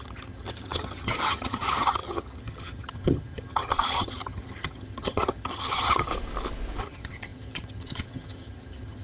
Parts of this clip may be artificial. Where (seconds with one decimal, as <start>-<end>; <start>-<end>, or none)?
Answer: 0.0-6.1; 6.8-9.0

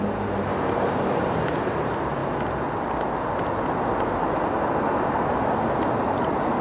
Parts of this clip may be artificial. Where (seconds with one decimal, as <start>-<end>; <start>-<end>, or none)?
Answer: none

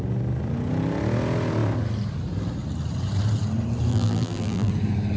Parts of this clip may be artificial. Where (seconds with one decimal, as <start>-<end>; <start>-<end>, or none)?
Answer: 3.9-4.7

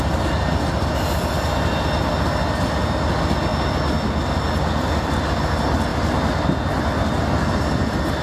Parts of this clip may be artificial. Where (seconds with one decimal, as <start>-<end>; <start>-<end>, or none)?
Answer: none

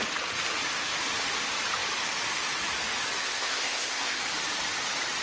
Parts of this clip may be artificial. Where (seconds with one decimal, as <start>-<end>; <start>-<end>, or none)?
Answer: 3.2-4.2

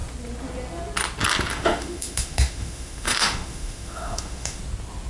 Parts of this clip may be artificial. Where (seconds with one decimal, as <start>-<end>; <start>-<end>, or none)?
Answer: 1.5-4.6